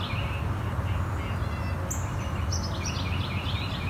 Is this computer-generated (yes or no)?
no